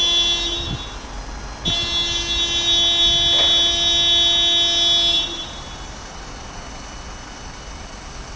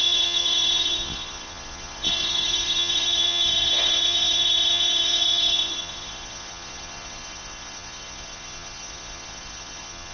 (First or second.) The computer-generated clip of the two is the second